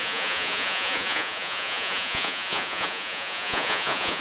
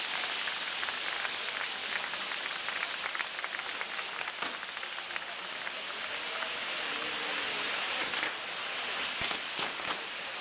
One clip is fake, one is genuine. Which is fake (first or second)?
first